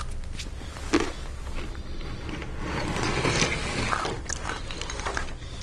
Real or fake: real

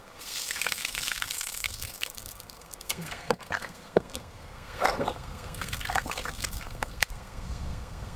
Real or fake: fake